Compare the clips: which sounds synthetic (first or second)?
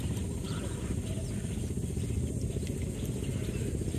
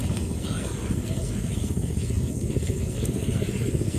second